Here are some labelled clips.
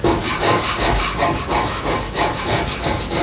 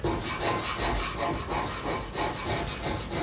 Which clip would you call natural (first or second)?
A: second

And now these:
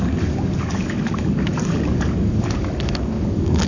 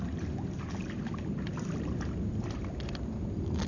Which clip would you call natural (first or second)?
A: second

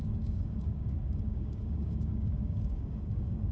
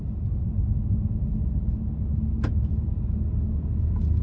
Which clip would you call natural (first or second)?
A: second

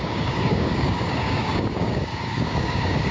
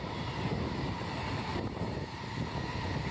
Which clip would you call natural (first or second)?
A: second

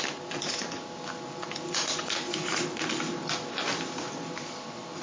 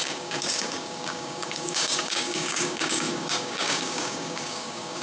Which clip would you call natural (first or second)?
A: first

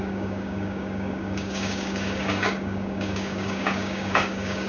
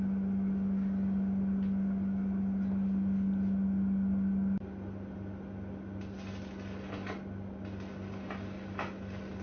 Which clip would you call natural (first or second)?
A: second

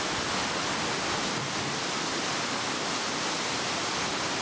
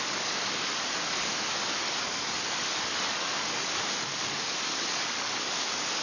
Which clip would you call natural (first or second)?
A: first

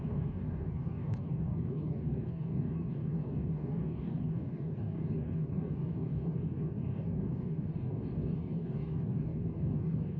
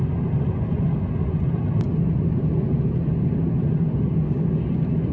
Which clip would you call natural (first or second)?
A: second